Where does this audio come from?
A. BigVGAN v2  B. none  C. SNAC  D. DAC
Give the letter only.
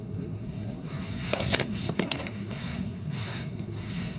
C